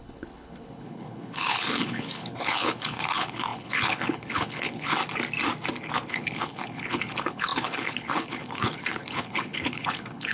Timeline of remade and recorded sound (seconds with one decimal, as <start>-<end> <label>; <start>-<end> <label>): 0.0-5.0 remade; 5.0-6.1 recorded; 6.1-10.3 remade